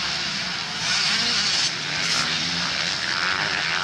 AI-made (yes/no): no